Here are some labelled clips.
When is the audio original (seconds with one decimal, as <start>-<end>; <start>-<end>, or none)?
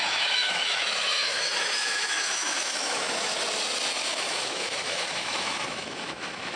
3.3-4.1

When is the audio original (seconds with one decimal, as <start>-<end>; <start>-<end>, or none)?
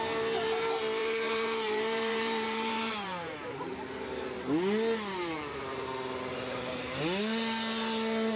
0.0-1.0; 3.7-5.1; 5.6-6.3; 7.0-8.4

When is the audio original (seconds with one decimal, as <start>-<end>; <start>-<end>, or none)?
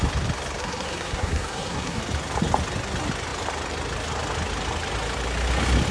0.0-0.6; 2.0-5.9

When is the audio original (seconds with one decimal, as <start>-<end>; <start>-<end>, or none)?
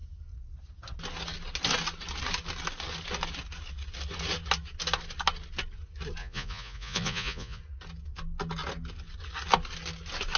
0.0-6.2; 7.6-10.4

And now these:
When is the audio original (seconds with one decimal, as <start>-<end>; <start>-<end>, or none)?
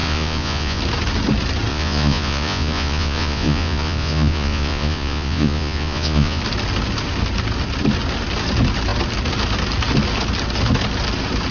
0.8-1.7; 6.4-11.5